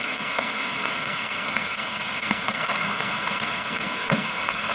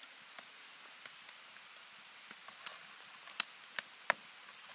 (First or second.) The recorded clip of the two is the second